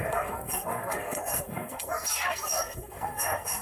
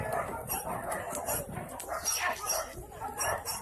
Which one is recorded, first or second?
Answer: second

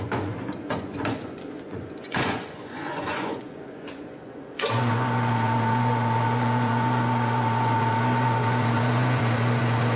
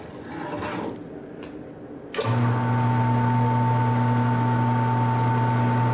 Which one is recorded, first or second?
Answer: second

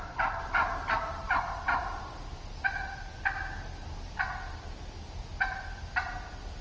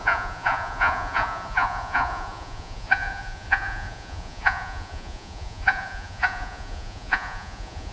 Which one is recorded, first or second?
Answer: first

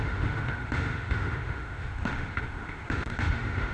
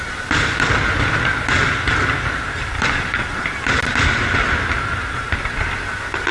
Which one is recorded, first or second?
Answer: second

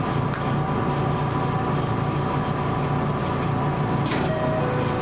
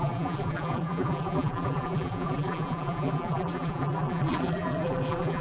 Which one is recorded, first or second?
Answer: first